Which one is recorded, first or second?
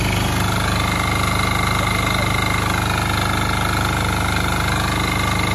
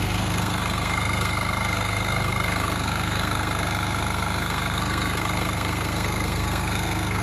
first